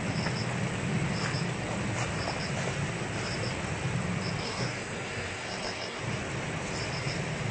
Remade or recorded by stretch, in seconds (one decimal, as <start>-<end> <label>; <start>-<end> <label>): 0.0-4.4 recorded; 4.4-6.0 remade; 6.0-7.5 recorded